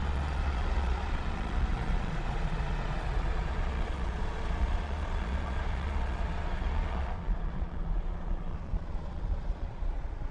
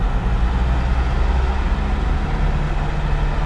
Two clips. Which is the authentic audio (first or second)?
second